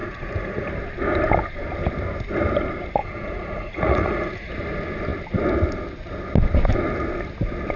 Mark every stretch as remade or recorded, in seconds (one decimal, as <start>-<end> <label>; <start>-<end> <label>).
0.0-0.7 remade; 0.7-3.0 recorded; 3.0-4.5 remade; 4.5-7.8 recorded